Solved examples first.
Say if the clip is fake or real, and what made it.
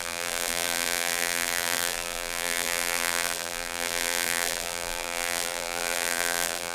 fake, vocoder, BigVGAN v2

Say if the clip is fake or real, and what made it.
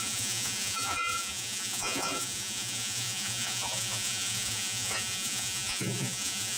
fake, vocoder, Vocos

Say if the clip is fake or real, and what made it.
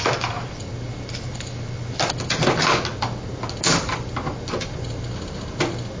real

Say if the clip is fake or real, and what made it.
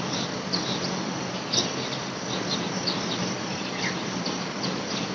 real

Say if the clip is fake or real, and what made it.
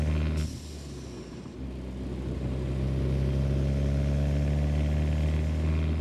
real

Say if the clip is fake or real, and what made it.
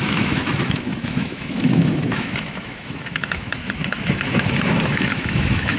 fake, autoencoder, DAC-VAE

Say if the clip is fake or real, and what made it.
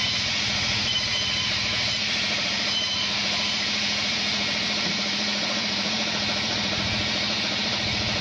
fake, vocoder, Vocos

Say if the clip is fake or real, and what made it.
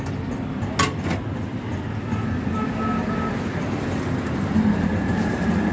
real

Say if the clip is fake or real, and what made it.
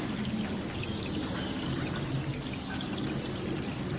real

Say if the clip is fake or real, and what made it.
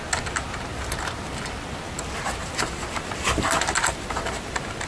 real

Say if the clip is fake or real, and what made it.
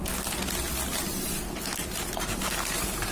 real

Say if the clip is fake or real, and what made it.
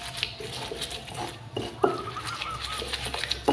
real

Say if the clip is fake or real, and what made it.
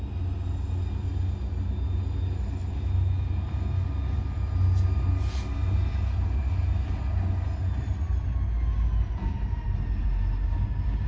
real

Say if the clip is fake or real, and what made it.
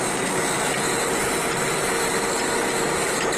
real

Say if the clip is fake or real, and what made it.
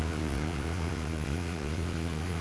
fake, vocoder, Vocos